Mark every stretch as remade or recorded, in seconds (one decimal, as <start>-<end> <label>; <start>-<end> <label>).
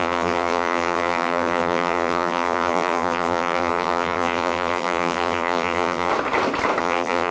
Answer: 0.0-6.1 remade; 6.1-6.8 recorded; 6.8-7.3 remade